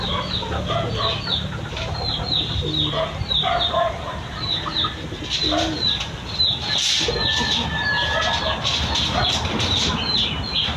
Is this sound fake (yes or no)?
no